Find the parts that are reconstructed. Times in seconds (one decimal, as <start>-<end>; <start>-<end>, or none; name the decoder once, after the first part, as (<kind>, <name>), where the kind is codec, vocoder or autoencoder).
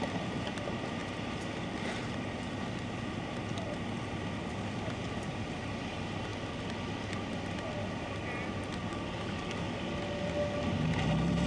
8.9-10.0 (codec, DAC)